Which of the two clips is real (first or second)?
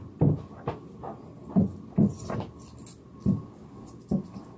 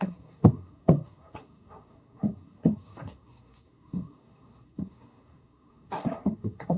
first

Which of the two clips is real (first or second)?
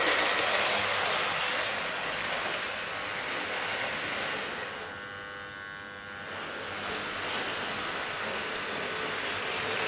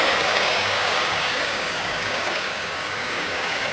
first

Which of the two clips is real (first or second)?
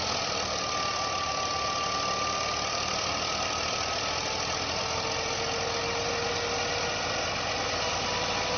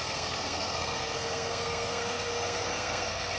first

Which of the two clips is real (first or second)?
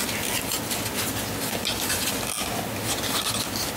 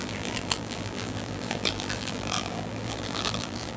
first